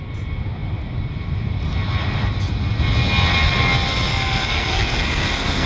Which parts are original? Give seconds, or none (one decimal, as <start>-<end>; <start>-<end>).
0.0-4.1